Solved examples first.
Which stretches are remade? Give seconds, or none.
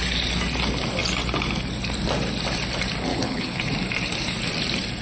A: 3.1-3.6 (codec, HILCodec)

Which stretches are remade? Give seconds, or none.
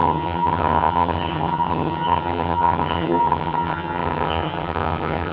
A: 0.0-5.3 (vocoder, HiFi-GAN)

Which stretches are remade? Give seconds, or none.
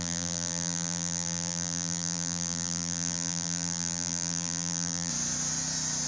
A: 0.0-5.1 (vocoder, BigVGAN v2)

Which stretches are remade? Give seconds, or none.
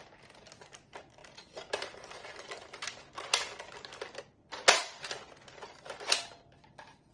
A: none